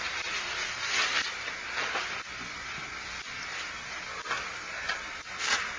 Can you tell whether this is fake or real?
real